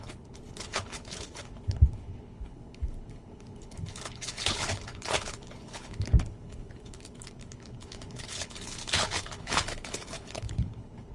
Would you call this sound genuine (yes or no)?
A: no